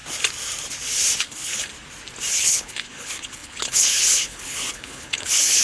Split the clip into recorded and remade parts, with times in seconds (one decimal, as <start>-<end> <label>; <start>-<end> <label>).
0.0-1.2 recorded; 1.2-1.7 remade; 1.7-2.3 recorded; 2.3-5.6 remade